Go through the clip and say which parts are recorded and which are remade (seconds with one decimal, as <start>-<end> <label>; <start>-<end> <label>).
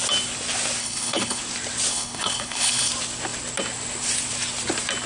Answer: 0.0-0.8 recorded; 0.8-1.4 remade; 1.4-1.9 recorded; 1.9-2.9 remade; 2.9-5.1 recorded